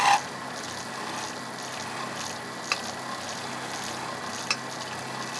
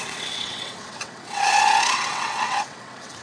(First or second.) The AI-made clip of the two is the second